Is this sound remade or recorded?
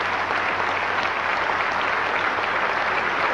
recorded